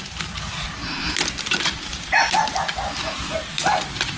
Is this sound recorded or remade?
recorded